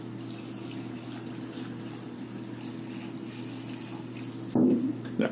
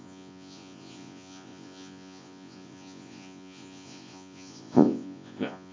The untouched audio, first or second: first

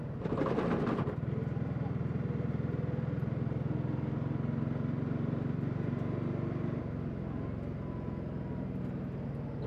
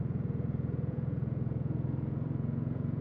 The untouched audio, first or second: first